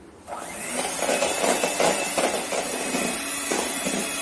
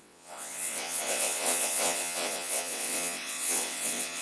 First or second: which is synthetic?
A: second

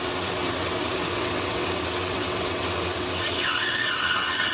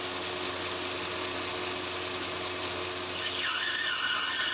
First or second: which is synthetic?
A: first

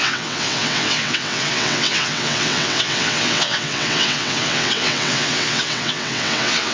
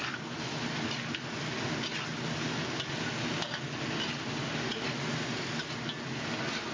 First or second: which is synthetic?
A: first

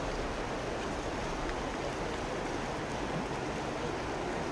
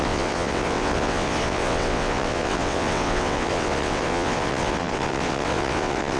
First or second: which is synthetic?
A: second